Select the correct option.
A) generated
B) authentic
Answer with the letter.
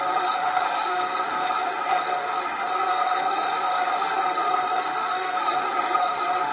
A